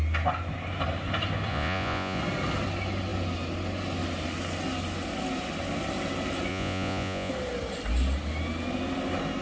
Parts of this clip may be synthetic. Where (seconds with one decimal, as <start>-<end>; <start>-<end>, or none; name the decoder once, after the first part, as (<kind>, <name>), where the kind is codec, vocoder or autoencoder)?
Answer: 1.5-2.2 (vocoder, Vocos); 6.5-7.3

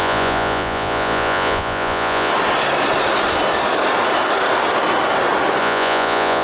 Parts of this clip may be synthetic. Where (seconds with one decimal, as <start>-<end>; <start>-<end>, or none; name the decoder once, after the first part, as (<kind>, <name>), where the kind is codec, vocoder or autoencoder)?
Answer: 0.0-2.3 (vocoder, Vocos); 5.6-6.4

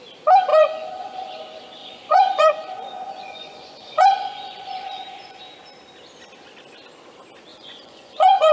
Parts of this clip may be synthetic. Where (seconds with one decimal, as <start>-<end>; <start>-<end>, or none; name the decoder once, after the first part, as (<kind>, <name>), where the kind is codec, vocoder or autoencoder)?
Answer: 0.5-1.3 (vocoder, Vocos); 1.8-5.4; 7.5-8.5

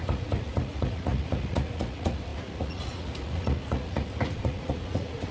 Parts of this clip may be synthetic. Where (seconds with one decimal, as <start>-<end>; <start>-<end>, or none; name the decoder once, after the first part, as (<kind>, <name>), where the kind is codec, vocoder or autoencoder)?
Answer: 0.0-5.3 (vocoder, Vocos)

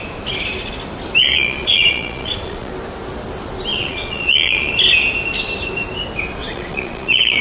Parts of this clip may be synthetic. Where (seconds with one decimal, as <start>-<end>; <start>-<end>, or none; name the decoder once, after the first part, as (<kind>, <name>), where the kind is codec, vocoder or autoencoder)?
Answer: 1.2-2.7 (vocoder, Vocos); 3.7-4.7; 6.4-7.4